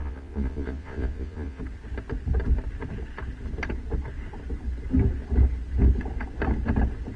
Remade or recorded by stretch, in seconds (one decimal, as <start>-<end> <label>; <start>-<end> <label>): 0.0-1.6 remade; 1.6-7.2 recorded